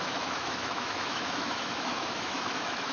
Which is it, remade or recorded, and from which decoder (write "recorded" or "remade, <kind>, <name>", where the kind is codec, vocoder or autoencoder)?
remade, autoencoder, DAC-VAE